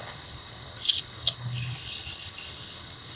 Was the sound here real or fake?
fake